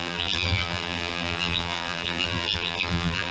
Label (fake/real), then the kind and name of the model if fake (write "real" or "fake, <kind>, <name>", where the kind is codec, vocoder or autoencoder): fake, vocoder, BigVGAN v2